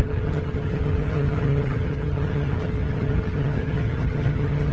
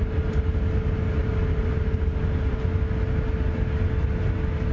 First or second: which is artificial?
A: first